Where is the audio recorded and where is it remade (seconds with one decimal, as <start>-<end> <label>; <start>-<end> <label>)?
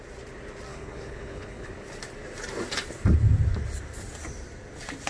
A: 0.0-0.7 recorded; 0.7-1.7 remade; 1.7-5.1 recorded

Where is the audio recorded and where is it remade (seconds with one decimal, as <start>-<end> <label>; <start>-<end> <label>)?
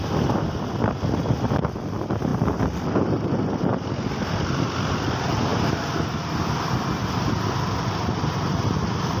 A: 0.0-9.2 recorded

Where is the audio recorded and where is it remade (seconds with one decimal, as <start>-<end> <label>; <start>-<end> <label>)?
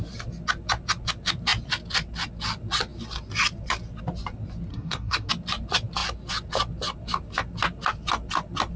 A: 0.0-4.7 recorded; 4.7-5.3 remade; 5.3-8.8 recorded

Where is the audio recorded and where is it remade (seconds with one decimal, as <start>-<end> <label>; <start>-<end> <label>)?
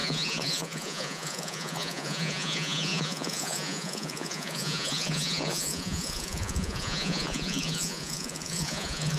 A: 0.0-9.2 remade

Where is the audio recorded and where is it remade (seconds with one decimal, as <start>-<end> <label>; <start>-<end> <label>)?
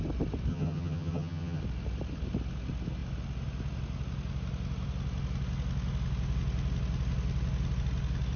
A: 0.0-0.5 recorded; 0.5-1.6 remade; 1.6-8.4 recorded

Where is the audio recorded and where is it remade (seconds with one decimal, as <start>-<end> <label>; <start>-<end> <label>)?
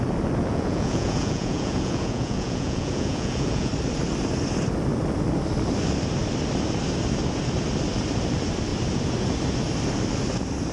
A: 0.0-0.5 recorded; 0.5-3.7 remade; 3.7-10.7 recorded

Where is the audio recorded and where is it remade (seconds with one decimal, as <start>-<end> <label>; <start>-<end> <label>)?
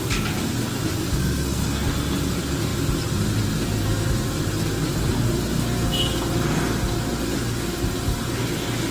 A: 0.0-1.1 recorded; 1.1-1.9 remade; 1.9-8.9 recorded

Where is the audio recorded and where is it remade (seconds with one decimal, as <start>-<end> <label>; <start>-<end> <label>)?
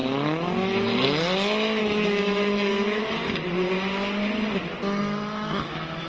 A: 0.0-1.8 recorded; 1.8-3.0 remade; 3.0-5.0 recorded; 5.0-6.1 remade